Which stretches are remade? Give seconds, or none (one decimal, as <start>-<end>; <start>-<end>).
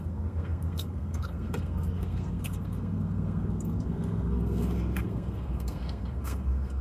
0.0-6.8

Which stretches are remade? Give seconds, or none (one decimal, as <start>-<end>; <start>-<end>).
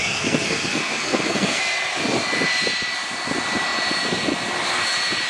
0.0-1.6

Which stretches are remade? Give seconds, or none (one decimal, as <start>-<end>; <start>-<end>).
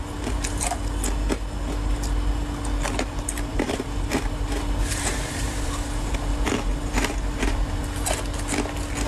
3.5-6.1; 6.7-7.5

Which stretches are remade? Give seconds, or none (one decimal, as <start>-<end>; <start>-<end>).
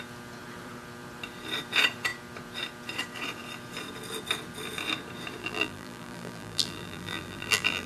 5.4-7.9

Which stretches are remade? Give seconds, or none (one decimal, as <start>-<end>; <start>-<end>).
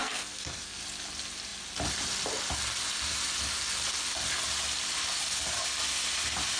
0.0-0.8